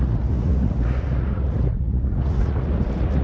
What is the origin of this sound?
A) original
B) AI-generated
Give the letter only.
B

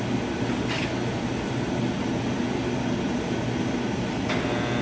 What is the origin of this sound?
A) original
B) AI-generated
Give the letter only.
A